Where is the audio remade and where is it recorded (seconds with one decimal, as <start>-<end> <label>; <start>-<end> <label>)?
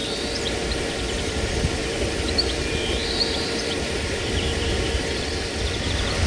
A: 0.0-6.3 remade